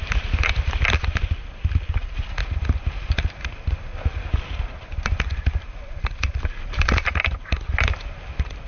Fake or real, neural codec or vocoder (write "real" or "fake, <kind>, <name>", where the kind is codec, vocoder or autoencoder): real